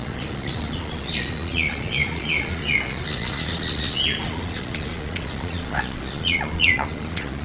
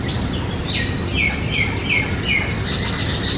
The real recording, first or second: second